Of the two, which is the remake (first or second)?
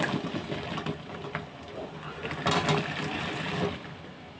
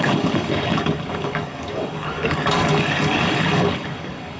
second